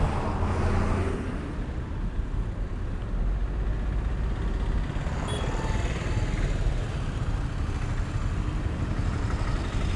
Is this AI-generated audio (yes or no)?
no